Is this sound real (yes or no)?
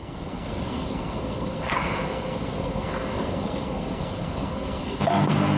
no